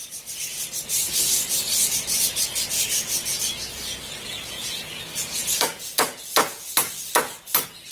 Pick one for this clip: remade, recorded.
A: recorded